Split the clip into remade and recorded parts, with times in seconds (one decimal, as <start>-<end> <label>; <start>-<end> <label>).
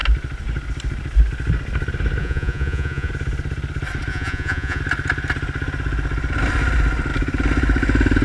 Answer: 0.0-2.2 recorded; 2.2-3.1 remade; 3.1-4.1 recorded; 4.1-4.8 remade; 4.8-8.2 recorded